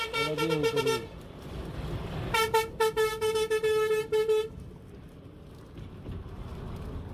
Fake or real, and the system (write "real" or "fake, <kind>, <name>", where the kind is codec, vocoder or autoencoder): real